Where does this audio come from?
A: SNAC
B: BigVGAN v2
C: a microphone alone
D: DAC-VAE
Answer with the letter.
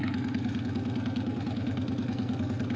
A